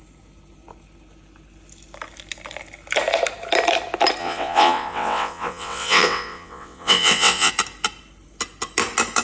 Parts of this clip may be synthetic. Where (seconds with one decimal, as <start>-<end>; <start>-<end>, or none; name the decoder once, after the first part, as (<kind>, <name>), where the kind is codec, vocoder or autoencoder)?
4.2-7.5 (vocoder, WaveNeXt)